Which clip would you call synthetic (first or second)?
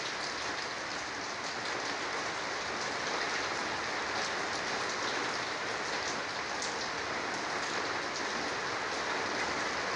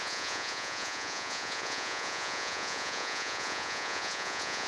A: second